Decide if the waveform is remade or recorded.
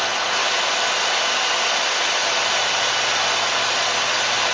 remade